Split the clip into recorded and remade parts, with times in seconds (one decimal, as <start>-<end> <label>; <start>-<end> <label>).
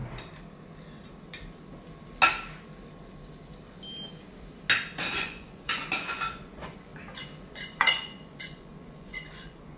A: 0.0-5.1 recorded; 5.1-6.9 remade; 6.9-7.5 recorded; 7.5-9.8 remade